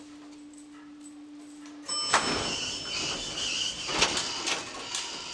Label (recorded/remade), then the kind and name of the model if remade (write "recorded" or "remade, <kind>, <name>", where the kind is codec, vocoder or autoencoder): recorded